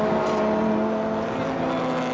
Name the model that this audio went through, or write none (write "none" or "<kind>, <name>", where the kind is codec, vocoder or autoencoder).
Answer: none